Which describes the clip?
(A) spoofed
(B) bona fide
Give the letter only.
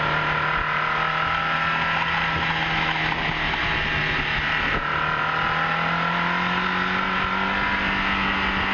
B